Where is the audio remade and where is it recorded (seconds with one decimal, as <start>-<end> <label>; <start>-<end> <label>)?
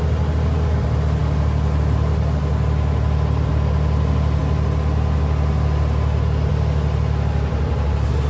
0.0-8.3 recorded